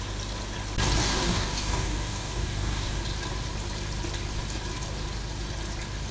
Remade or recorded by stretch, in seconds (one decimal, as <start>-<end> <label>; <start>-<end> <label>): 0.0-1.0 recorded; 1.0-3.0 remade; 3.0-6.1 recorded